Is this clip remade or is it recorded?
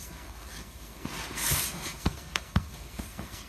remade